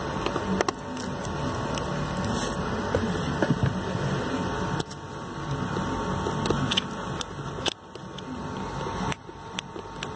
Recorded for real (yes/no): yes